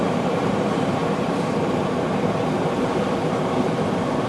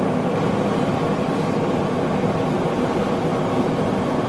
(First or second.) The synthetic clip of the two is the first